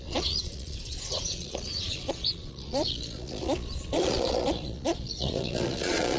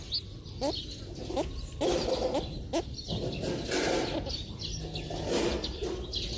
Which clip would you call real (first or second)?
second